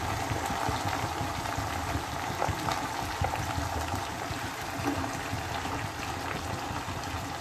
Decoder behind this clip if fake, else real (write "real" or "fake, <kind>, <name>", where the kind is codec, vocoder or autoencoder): real